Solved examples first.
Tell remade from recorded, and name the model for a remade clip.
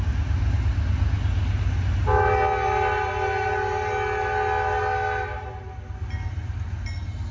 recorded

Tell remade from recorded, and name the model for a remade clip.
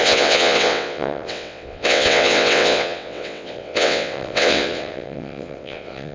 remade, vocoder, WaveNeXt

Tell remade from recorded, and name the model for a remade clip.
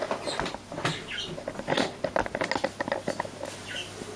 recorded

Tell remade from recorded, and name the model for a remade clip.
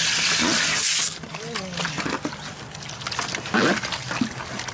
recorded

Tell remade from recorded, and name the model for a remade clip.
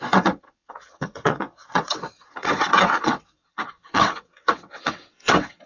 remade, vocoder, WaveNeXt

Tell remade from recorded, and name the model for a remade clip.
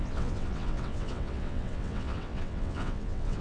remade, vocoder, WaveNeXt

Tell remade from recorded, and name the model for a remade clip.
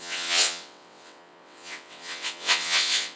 remade, vocoder, WaveNeXt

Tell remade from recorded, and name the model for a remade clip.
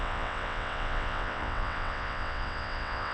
remade, vocoder, WaveNeXt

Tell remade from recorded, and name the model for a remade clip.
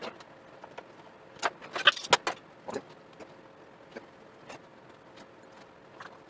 recorded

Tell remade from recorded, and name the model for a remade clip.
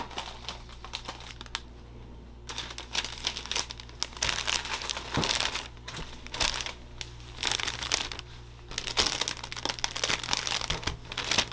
recorded